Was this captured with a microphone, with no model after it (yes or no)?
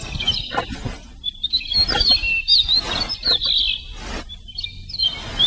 yes